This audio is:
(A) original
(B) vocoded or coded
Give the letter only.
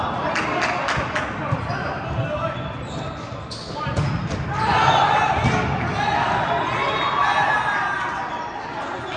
A